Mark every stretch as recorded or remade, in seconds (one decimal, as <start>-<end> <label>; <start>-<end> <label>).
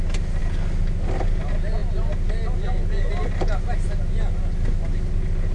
0.0-5.5 recorded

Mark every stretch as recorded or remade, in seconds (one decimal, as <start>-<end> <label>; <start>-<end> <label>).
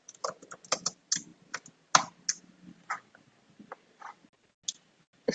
0.0-5.3 recorded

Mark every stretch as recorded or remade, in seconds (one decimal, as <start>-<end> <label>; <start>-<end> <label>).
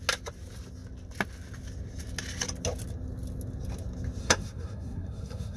0.0-4.2 recorded; 4.2-5.6 remade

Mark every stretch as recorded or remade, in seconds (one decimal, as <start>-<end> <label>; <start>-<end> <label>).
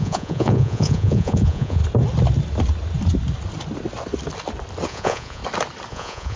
0.0-1.8 remade; 1.8-4.9 recorded; 4.9-5.4 remade; 5.4-5.9 recorded; 5.9-6.4 remade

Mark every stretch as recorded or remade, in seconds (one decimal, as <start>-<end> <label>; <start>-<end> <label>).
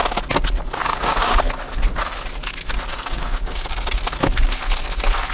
0.0-0.8 recorded; 0.8-1.4 remade; 1.4-2.9 recorded; 2.9-4.0 remade; 4.0-5.3 recorded